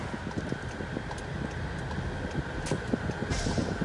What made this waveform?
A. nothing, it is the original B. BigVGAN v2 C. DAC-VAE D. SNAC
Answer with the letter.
A